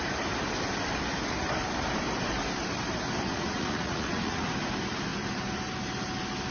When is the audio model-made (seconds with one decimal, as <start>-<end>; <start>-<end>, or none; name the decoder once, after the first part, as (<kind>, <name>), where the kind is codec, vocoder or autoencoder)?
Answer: 3.3-4.5 (vocoder, Vocos)

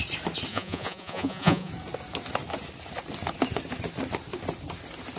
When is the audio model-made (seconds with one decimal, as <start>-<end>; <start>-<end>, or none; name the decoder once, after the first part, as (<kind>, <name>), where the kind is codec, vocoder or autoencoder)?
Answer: 0.5-1.7 (vocoder, Vocos)

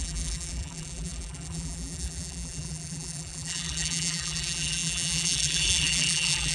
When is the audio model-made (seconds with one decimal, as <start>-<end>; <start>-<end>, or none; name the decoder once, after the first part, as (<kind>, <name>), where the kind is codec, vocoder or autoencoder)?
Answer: 0.0-6.5 (vocoder, BigVGAN v2)

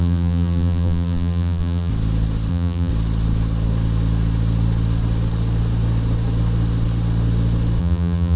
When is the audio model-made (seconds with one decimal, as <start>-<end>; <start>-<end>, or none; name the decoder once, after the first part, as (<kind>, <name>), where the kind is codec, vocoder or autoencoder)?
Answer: 0.0-1.9 (vocoder, BigVGAN v2); 2.5-2.9; 7.8-8.4